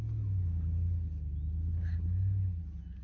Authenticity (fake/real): real